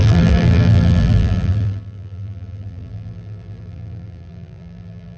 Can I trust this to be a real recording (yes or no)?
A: no